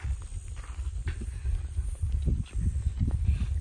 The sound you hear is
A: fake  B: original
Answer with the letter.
B